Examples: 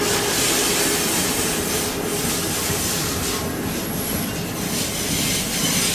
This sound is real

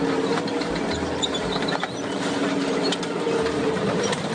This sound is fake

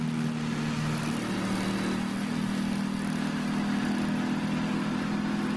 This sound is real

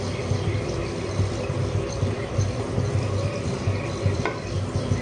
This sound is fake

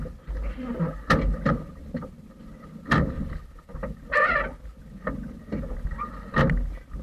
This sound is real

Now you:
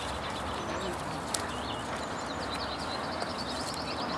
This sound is real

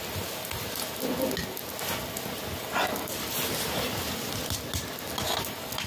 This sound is real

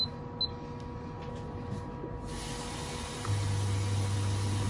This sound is real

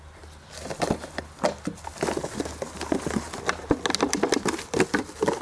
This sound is real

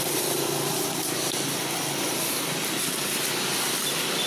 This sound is real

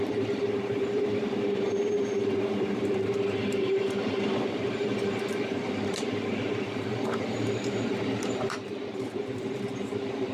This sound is fake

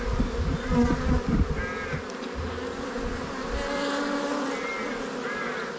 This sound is real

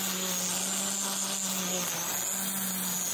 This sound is real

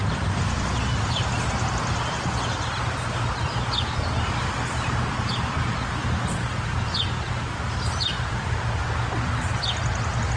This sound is real